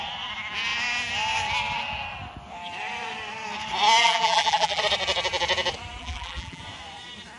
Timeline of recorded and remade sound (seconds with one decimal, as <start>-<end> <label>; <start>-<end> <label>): 0.0-4.0 recorded; 4.0-4.8 remade; 4.8-6.0 recorded; 6.0-6.6 remade; 6.6-7.4 recorded